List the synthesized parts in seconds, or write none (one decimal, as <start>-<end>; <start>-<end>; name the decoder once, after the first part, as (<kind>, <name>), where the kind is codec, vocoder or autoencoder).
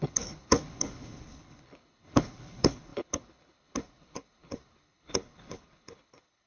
0.0-6.5 (codec, HILCodec)